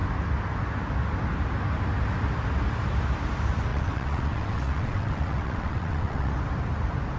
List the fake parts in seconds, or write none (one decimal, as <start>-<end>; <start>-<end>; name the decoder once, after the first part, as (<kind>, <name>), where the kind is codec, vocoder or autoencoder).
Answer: 3.7-6.3 (vocoder, WaveNeXt)